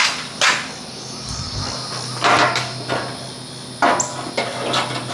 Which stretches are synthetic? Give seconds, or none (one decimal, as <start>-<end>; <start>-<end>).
0.9-1.6